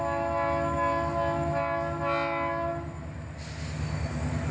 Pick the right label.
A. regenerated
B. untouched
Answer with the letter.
B